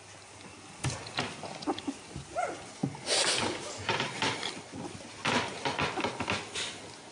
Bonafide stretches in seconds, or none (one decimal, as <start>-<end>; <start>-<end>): 0.0-7.1